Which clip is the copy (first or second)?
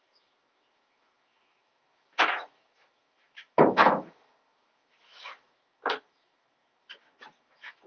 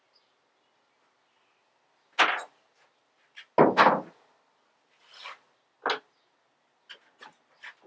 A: first